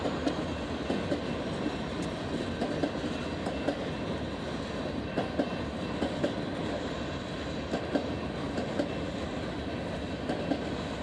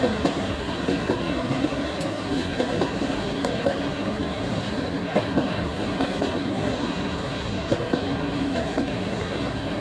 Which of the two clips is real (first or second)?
first